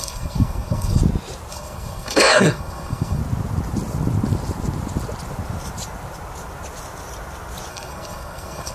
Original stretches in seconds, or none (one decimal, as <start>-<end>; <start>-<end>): 1.0-1.5; 3.2-7.7